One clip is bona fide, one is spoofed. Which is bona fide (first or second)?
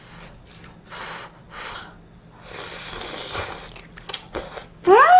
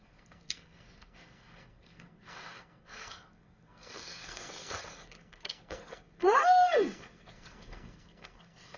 first